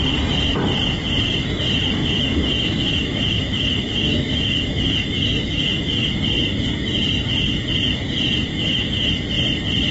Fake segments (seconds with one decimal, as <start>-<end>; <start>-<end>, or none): 2.0-6.1; 8.5-9.1